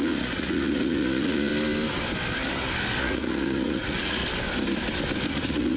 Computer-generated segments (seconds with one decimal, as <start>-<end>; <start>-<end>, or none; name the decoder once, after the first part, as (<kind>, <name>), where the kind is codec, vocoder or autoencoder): 0.0-1.5 (vocoder, Vocos); 3.0-4.2; 5.3-5.8